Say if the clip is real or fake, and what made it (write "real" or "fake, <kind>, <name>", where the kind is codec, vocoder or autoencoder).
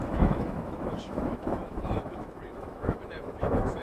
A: fake, autoencoder, DAC-VAE